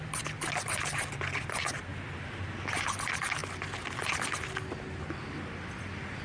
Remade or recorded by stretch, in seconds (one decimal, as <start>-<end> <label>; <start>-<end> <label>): 0.0-6.2 recorded